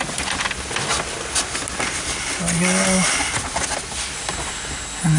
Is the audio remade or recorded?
recorded